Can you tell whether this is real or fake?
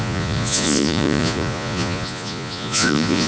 fake